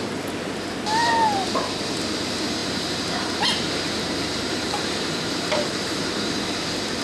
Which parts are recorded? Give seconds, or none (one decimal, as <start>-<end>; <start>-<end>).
0.0-2.6; 6.4-7.0